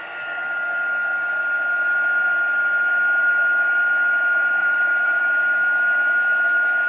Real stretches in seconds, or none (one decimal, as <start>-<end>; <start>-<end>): 0.0-4.6; 5.2-6.9